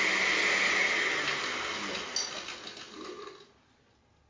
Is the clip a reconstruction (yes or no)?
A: no